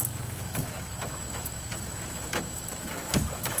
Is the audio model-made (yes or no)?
yes